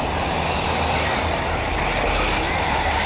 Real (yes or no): yes